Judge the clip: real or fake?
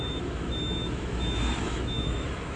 fake